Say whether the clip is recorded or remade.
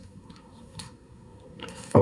remade